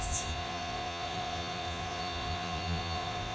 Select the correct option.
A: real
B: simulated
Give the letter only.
B